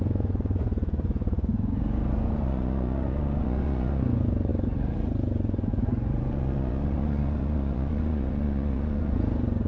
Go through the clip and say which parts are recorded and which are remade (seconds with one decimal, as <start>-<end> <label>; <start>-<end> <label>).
0.0-9.7 remade